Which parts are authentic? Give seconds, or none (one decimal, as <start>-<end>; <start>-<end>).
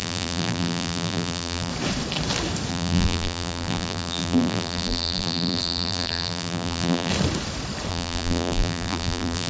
1.7-2.7; 7.1-7.9